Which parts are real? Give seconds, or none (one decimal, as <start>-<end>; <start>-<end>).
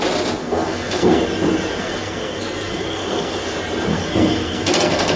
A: 0.0-0.4; 1.2-1.8; 3.4-3.9